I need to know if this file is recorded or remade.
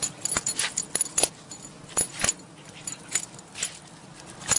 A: recorded